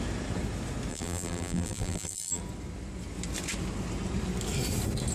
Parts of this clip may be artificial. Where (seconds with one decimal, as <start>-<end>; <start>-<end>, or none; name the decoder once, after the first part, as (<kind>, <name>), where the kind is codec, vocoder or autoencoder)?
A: 0.9-2.4 (vocoder, BigVGAN v2)